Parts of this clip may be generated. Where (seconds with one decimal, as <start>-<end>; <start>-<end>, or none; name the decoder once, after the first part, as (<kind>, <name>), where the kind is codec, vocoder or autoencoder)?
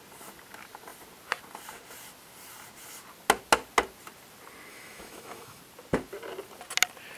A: 4.7-5.6 (autoencoder, DAC-VAE)